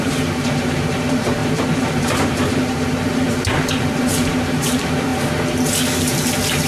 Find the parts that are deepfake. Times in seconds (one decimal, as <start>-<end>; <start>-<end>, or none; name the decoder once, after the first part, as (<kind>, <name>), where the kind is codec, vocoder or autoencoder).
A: 0.0-5.1 (vocoder, BigVGAN v2); 6.0-6.7